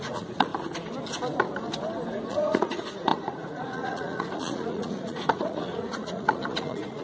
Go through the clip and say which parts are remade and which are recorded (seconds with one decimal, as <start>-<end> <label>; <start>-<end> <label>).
0.0-0.5 remade; 0.5-2.3 recorded; 2.3-7.0 remade